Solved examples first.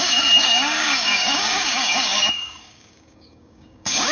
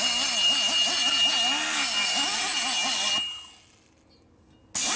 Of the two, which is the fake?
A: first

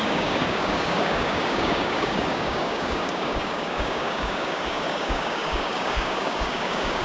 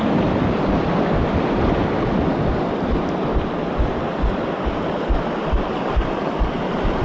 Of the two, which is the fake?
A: first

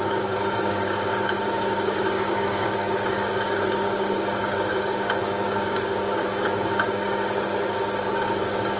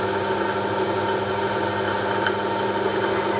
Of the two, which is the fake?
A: first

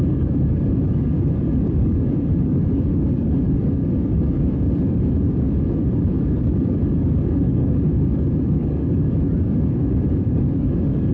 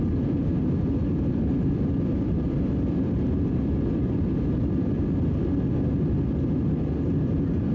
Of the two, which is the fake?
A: first